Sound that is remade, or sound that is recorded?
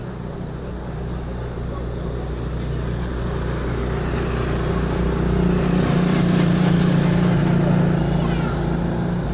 recorded